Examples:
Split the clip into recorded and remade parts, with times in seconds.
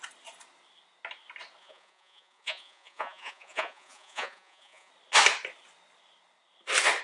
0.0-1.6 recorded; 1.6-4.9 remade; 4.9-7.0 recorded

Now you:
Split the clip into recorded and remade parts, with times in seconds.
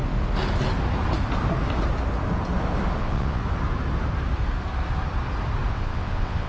0.0-3.0 recorded; 3.0-3.4 remade; 3.4-5.7 recorded; 5.7-6.5 remade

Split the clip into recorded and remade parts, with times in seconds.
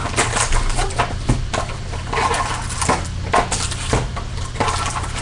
0.0-5.2 recorded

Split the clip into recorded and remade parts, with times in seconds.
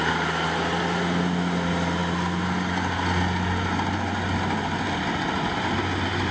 0.0-6.3 recorded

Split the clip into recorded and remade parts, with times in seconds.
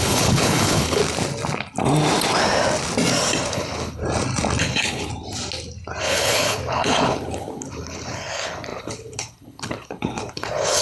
0.0-1.0 remade; 1.0-3.5 recorded; 3.5-4.0 remade; 4.0-4.6 recorded; 4.6-5.1 remade; 5.1-6.0 recorded; 6.0-10.8 remade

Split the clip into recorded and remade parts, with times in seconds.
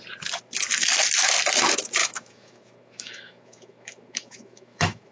0.0-2.0 recorded; 2.0-5.1 remade